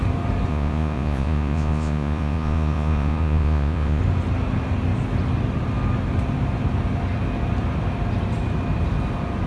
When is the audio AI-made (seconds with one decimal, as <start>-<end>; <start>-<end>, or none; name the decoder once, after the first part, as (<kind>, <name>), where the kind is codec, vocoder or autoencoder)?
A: 0.5-4.0 (vocoder, Vocos)